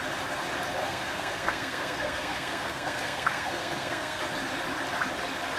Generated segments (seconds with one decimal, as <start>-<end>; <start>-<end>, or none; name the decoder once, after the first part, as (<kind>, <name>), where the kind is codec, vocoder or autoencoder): 0.8-4.2 (codec, SNAC)

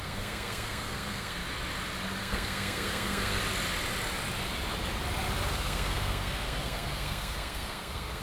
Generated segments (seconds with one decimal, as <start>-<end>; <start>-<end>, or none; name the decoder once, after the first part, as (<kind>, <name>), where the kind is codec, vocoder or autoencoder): 0.0-1.4 (codec, SNAC); 2.2-3.4; 5.5-8.2

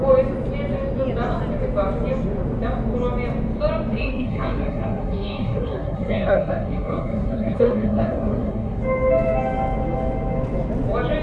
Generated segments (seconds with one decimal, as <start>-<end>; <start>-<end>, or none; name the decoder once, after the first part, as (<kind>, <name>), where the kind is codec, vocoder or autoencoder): 4.0-8.8 (codec, SNAC)

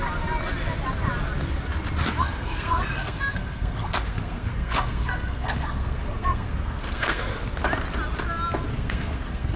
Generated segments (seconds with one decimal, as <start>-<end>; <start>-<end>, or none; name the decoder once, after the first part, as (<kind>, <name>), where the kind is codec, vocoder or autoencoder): 2.2-7.2 (codec, SNAC); 8.7-9.6

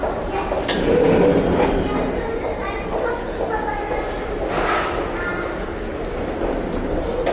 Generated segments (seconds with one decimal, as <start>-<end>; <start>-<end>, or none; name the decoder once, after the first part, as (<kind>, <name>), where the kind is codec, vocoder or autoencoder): none

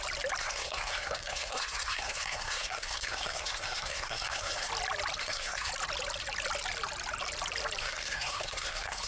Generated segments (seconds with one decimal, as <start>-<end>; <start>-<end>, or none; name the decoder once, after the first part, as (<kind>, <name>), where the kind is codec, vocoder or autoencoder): 0.4-4.7 (codec, SNAC); 5.2-5.7; 7.8-9.1

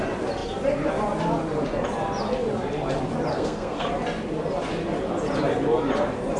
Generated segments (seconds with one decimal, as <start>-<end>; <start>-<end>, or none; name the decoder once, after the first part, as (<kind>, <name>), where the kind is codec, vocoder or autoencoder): 3.3-3.9 (codec, SNAC)